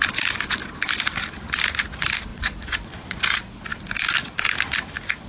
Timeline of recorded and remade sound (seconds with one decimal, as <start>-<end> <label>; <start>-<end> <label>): 0.0-2.3 recorded; 2.3-3.2 remade; 3.2-5.3 recorded